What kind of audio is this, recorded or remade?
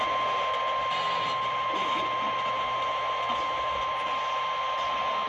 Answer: recorded